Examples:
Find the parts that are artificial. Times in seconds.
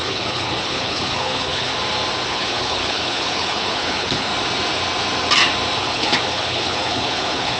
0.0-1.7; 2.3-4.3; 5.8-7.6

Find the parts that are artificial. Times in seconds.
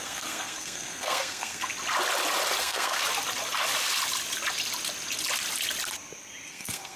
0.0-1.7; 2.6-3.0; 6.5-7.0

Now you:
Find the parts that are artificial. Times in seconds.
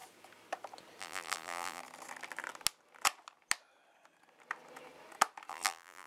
1.0-1.8; 5.5-6.1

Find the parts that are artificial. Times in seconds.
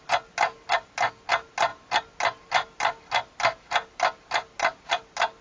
none